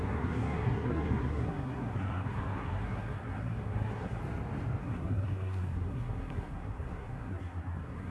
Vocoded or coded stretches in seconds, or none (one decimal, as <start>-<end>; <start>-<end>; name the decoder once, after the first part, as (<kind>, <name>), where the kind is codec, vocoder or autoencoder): 0.0-4.2 (codec, SNAC); 4.8-8.1